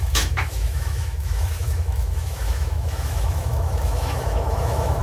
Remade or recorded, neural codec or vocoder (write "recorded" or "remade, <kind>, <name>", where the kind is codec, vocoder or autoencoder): remade, autoencoder, DAC-VAE